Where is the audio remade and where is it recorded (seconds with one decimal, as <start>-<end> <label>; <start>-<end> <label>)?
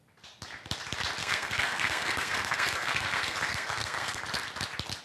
0.0-1.2 recorded; 1.2-4.2 remade; 4.2-5.0 recorded